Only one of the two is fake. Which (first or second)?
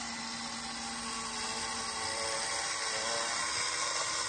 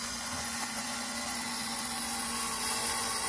second